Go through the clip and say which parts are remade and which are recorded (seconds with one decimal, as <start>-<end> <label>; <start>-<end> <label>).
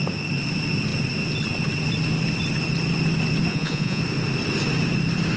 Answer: 0.0-3.5 recorded; 3.5-4.0 remade; 4.0-5.4 recorded